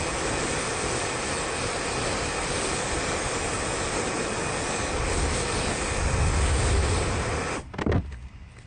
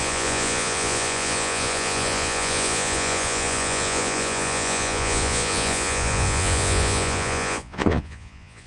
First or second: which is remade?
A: second